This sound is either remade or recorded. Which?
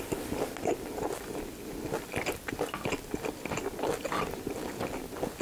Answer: recorded